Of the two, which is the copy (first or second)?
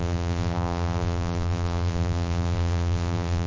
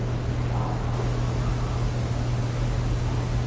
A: first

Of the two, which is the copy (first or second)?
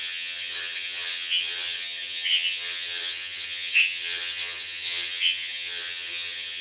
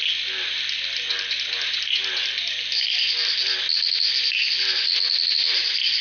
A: first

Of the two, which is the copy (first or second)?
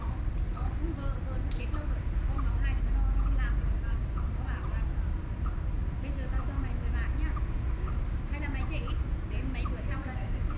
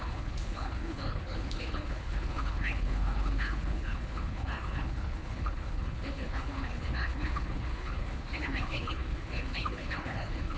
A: second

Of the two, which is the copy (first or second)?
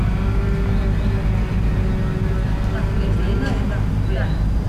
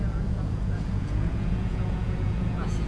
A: second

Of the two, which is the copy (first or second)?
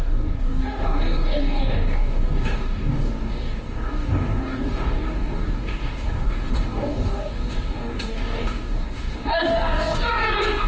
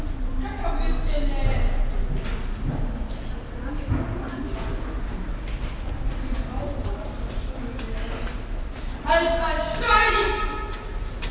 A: first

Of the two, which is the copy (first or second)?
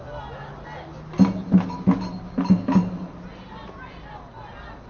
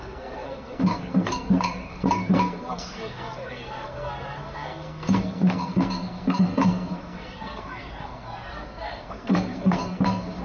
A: second